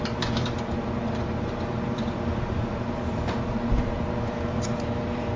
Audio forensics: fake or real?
fake